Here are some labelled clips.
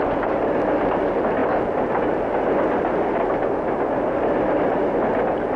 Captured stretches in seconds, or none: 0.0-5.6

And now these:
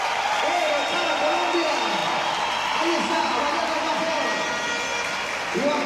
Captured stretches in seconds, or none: 0.0-5.9

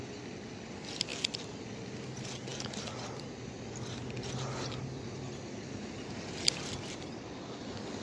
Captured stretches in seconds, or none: 0.0-8.0

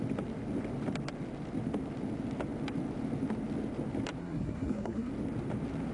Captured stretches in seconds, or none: 0.0-4.2; 5.1-5.9

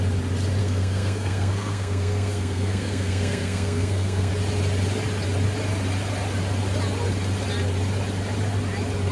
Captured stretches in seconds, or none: 0.0-0.6; 4.3-9.1

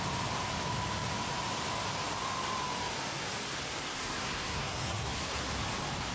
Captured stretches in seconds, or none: 0.0-3.8; 5.5-6.1